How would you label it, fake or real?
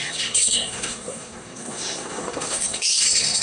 fake